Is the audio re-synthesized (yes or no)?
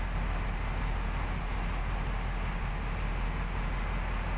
no